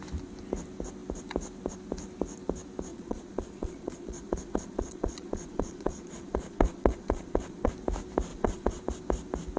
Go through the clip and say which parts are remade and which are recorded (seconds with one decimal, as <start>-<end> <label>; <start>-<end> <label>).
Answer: 0.0-2.9 recorded; 2.9-7.7 remade; 7.7-8.3 recorded; 8.3-8.8 remade; 8.8-9.6 recorded